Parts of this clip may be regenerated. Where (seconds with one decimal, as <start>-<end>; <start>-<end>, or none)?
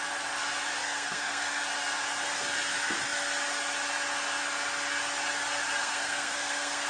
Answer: 0.8-1.6; 5.8-6.9